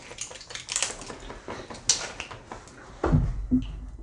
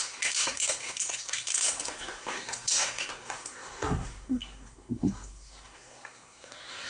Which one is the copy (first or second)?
second